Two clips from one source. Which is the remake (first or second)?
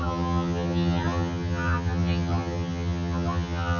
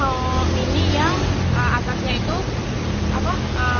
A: first